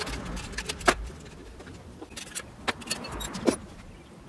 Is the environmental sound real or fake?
real